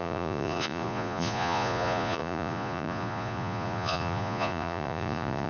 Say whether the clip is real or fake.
fake